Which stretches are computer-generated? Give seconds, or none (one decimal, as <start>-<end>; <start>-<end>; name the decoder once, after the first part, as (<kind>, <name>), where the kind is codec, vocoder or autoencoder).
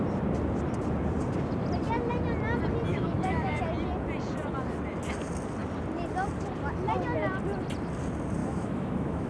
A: 2.9-3.6 (autoencoder, DAC-VAE); 8.4-9.3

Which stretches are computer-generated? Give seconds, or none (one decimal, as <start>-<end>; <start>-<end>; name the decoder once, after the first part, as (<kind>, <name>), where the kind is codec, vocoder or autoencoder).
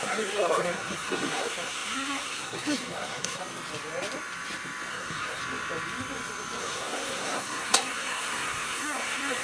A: 0.0-3.4 (codec, SNAC); 4.9-5.4; 6.6-9.4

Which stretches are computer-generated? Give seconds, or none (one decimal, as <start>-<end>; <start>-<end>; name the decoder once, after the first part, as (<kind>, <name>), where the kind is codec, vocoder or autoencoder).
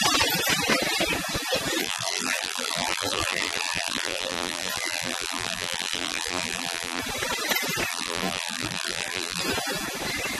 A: 1.8-7.0 (vocoder, BigVGAN v2); 7.9-9.4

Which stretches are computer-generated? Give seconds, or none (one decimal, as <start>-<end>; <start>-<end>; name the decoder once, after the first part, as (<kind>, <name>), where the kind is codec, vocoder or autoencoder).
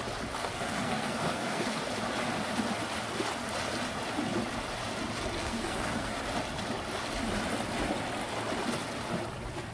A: 0.4-1.8 (codec, SNAC); 5.4-6.2